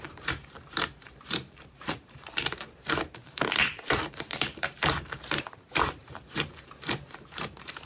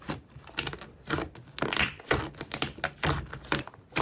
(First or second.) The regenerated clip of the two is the first